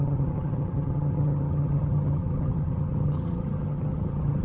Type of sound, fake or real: fake